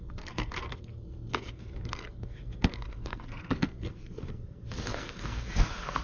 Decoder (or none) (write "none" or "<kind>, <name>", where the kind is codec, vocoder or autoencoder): codec, SNAC